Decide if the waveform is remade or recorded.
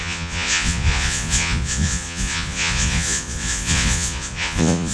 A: remade